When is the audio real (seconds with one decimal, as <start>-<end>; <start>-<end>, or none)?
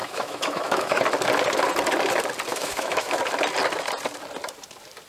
1.0-2.5; 3.2-5.1